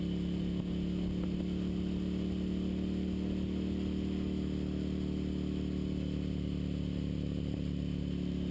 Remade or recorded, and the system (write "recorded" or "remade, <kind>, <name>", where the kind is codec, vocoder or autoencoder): recorded